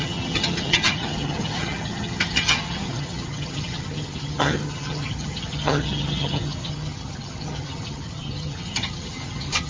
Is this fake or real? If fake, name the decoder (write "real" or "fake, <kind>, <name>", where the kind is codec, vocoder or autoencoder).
fake, vocoder, HiFi-GAN